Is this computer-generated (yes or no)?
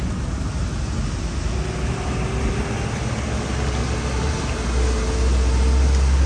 no